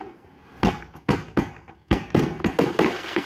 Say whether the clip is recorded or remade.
remade